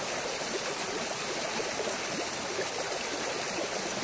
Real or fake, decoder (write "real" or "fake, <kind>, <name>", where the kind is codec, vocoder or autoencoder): fake, vocoder, BigVGAN v2